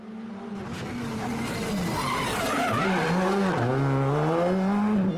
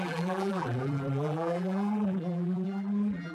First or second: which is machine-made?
second